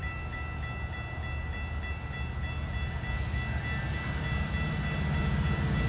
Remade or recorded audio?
recorded